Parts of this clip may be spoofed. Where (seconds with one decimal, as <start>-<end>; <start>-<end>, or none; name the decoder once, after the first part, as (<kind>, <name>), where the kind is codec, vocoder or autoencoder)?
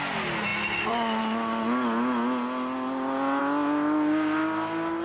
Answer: none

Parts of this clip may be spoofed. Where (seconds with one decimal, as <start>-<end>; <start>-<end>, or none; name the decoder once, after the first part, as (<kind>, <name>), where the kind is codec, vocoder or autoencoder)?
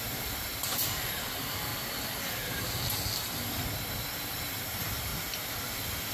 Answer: 0.0-0.5 (vocoder, BigVGAN v2); 1.0-1.7; 4.3-5.1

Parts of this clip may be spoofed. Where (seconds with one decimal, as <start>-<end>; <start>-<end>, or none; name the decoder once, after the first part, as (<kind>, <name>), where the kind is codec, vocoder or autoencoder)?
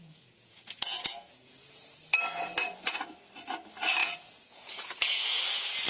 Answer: 0.0-1.9 (vocoder, Vocos); 4.0-5.4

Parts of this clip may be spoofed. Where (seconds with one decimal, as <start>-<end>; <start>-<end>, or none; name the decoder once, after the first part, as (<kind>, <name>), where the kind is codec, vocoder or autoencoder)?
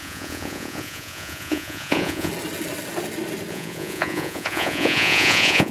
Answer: 0.0-2.3 (vocoder, Vocos); 3.5-5.7